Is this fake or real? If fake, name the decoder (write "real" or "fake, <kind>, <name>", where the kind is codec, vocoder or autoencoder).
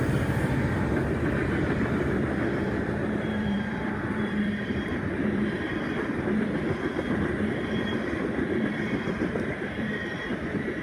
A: fake, vocoder, BigVGAN v2